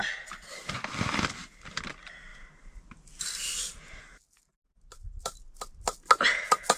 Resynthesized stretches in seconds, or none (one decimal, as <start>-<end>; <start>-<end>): 0.6-1.9